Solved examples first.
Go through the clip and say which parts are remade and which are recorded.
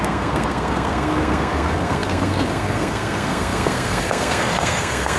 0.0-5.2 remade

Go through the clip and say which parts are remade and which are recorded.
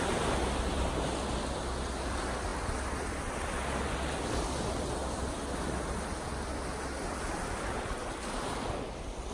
0.0-9.3 recorded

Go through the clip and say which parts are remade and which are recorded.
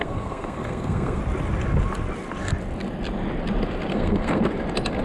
0.0-1.2 remade; 1.2-3.9 recorded; 3.9-4.4 remade; 4.4-5.0 recorded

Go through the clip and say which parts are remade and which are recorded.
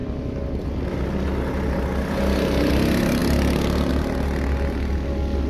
0.0-5.5 recorded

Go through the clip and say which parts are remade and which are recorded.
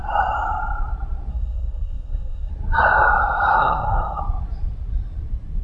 0.0-1.3 recorded; 1.3-2.5 remade; 2.5-3.5 recorded; 3.5-4.2 remade; 4.2-5.6 recorded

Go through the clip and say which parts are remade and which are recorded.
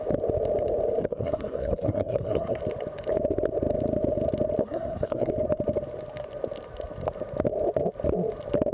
0.0-1.0 recorded; 1.0-2.6 remade; 2.6-4.6 recorded; 4.6-5.3 remade; 5.3-8.7 recorded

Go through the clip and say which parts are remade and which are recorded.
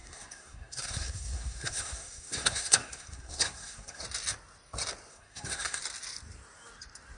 0.0-4.0 remade; 4.0-5.1 recorded; 5.1-5.8 remade; 5.8-7.2 recorded